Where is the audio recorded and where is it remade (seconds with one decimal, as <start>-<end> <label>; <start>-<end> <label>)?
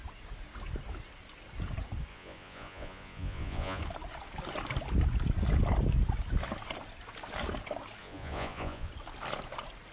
0.0-2.1 recorded; 2.1-3.8 remade; 3.8-8.0 recorded; 8.0-8.9 remade; 8.9-9.9 recorded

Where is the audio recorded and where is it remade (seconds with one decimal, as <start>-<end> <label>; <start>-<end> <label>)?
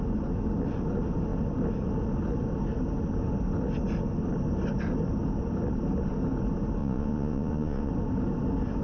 0.0-6.8 recorded; 6.8-7.9 remade; 7.9-8.8 recorded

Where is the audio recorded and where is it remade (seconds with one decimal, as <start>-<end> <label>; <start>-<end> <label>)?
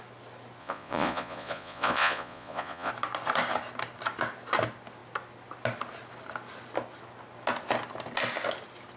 0.0-0.6 recorded; 0.6-2.9 remade; 2.9-9.0 recorded